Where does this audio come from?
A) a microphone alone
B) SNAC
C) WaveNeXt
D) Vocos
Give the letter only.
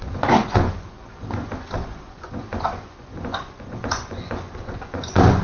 D